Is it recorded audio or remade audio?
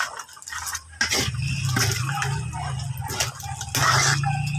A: recorded